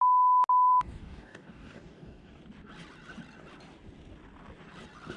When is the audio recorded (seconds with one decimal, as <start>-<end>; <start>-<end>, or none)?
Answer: 0.0-0.7; 2.4-5.2